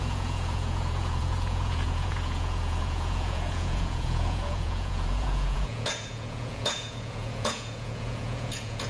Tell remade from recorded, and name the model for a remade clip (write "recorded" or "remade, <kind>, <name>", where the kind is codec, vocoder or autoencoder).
remade, vocoder, Vocos